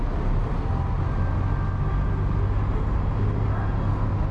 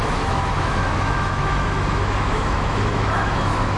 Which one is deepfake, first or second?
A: second